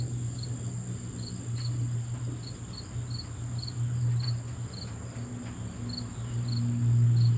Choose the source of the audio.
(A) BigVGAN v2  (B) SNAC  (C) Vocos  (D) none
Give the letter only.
D